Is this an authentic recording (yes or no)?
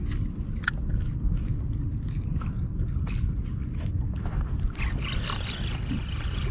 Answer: yes